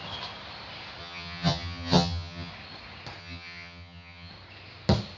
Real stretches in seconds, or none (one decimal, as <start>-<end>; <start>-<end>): 0.0-1.0; 2.5-3.2; 4.3-5.2

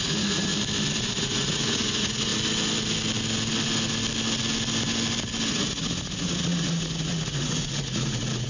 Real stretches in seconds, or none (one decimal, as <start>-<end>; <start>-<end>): 0.5-1.0; 2.3-5.5

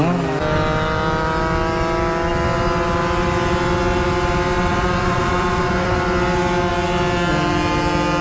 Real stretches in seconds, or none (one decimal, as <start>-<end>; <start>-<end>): 0.0-4.7; 5.7-8.2

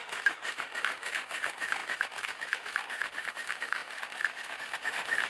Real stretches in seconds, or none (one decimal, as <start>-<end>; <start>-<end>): none

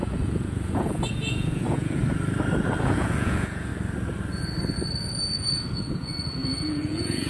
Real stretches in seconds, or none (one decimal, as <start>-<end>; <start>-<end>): 2.0-2.8; 3.7-5.4

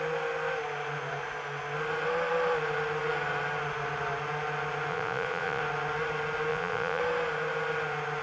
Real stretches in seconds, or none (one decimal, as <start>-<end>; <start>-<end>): 0.0-4.9; 5.6-6.5; 7.0-8.2